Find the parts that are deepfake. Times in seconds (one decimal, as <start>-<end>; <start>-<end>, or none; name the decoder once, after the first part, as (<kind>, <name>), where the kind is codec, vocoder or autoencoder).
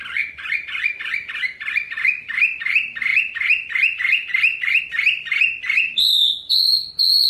0.0-3.1 (vocoder, BigVGAN v2); 4.8-7.3